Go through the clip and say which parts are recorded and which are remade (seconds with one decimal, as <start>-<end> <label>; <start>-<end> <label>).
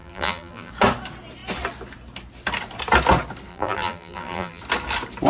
0.0-0.7 remade; 0.7-3.5 recorded; 3.5-4.6 remade; 4.6-5.3 recorded